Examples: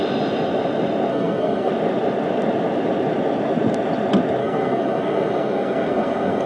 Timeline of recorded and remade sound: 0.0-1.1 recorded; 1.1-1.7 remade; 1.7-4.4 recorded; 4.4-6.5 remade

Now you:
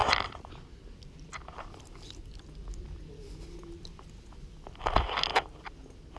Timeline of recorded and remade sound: 0.0-6.2 recorded